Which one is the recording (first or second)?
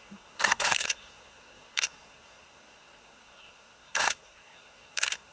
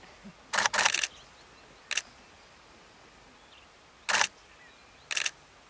second